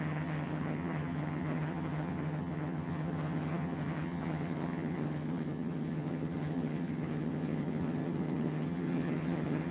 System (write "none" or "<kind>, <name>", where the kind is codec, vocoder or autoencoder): vocoder, HiFi-GAN